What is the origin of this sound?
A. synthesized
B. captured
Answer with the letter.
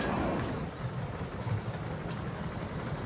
B